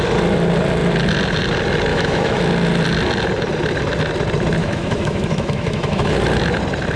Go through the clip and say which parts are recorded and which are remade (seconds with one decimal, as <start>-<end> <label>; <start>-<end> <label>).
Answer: 0.0-1.9 recorded; 1.9-2.4 remade; 2.4-4.6 recorded; 4.6-6.1 remade; 6.1-7.0 recorded